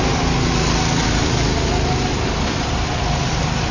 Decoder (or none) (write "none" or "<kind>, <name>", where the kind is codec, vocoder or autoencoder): none